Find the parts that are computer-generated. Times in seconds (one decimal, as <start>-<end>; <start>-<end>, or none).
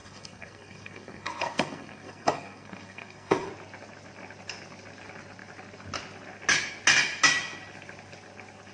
0.0-3.5